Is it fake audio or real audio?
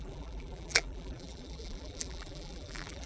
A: fake